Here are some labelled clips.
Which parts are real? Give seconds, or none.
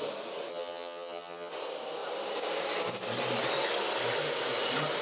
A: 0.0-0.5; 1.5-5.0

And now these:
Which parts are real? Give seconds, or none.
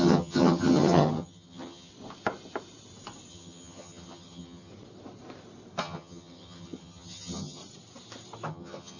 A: 1.9-3.3; 4.7-5.8; 7.6-8.5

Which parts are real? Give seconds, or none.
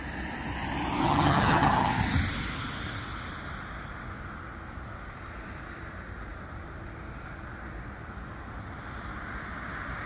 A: 0.0-1.0; 1.9-10.1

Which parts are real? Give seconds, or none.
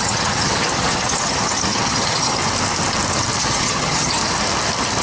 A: 2.4-3.4; 4.2-5.0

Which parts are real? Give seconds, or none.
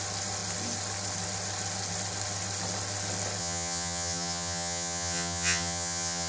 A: 0.0-3.4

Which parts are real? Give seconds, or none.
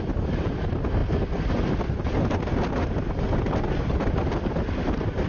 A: 0.0-5.3